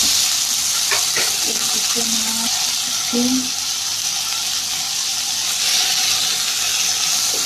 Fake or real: real